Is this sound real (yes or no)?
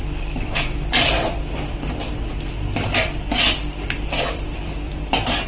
no